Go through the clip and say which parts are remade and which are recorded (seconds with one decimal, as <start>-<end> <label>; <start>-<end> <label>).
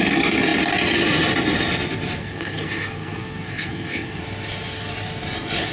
0.0-2.2 recorded; 2.2-4.2 remade; 4.2-5.7 recorded